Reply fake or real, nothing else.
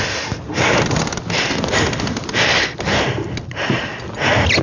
real